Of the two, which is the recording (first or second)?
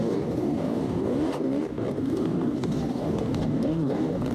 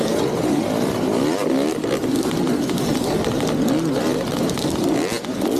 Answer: second